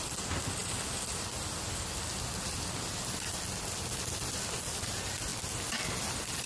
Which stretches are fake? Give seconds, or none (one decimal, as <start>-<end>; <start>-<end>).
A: none